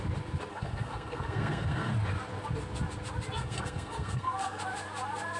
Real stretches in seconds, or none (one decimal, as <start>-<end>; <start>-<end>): 0.0-0.5; 1.9-3.4; 4.6-5.4